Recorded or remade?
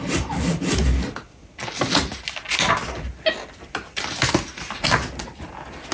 recorded